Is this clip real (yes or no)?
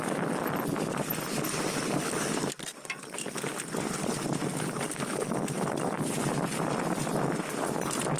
yes